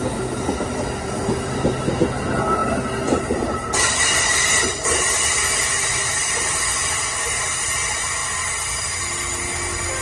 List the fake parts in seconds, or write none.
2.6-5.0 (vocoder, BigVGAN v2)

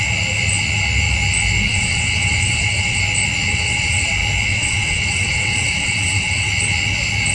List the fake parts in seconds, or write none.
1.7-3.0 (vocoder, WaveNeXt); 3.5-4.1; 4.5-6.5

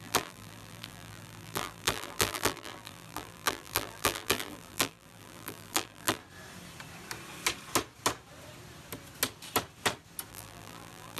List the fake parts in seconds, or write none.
0.0-6.2 (vocoder, BigVGAN v2); 10.3-11.2

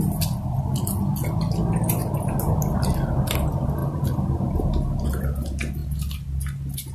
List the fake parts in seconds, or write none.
none